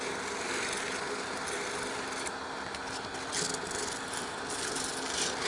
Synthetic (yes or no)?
no